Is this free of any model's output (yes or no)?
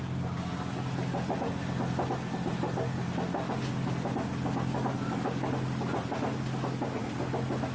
yes